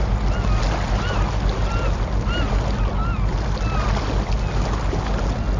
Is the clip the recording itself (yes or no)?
yes